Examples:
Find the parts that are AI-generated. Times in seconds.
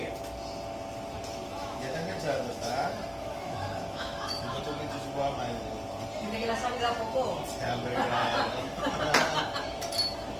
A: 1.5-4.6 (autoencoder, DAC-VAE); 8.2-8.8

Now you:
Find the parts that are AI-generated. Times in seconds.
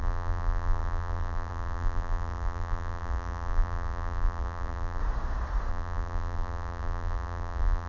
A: 0.0-5.0 (vocoder, BigVGAN v2); 5.7-7.9